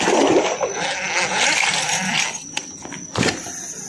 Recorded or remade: recorded